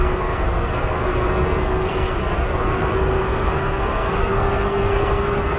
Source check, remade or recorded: remade